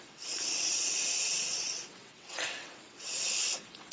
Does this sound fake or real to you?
fake